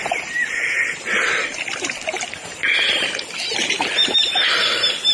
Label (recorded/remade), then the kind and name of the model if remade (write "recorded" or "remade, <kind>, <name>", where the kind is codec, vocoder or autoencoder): remade, vocoder, BigVGAN v2